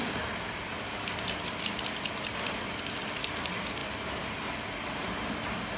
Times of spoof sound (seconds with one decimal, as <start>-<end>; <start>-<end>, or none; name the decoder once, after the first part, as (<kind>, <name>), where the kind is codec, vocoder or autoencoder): none